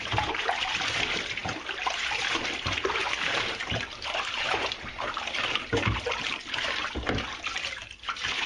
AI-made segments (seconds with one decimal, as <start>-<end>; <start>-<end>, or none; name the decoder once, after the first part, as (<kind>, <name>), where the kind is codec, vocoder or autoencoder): 0.0-8.5 (vocoder, BigVGAN v2)